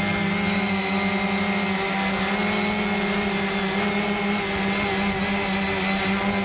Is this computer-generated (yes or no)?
no